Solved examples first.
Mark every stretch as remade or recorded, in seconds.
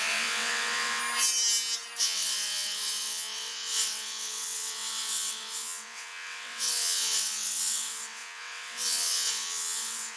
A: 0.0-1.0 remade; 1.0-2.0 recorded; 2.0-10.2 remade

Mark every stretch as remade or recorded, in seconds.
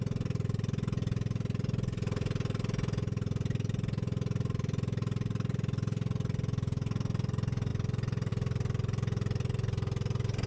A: 0.0-10.5 recorded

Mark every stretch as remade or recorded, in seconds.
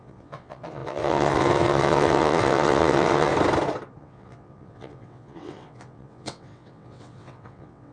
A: 0.0-3.3 remade; 3.3-4.0 recorded; 4.0-7.9 remade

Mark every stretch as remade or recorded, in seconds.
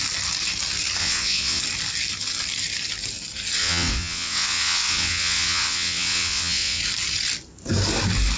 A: 0.0-1.0 recorded; 1.0-1.6 remade; 1.6-3.6 recorded; 3.6-6.8 remade; 6.8-8.4 recorded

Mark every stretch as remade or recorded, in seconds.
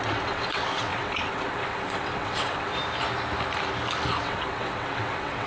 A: 0.0-2.7 remade; 2.7-4.2 recorded; 4.2-5.5 remade